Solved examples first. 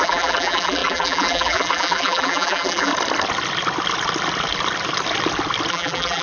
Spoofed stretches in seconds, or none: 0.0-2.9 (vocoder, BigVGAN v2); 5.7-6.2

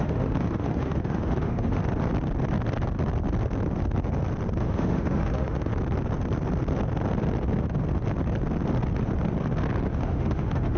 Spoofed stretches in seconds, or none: 0.0-1.8 (autoencoder, DAC-VAE); 4.6-5.7; 9.9-10.8

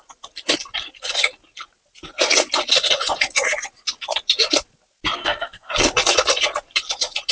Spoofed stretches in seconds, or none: 5.2-5.7 (codec, SNAC)